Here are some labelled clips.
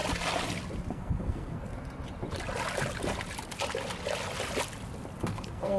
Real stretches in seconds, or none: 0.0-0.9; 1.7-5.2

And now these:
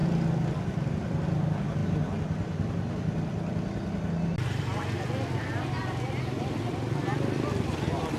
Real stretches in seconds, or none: 0.0-8.2

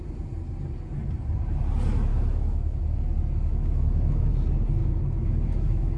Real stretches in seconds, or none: 0.0-2.1; 2.9-3.5; 4.3-4.8

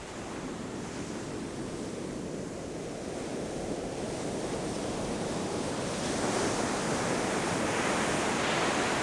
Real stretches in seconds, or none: 0.0-3.3; 6.1-9.0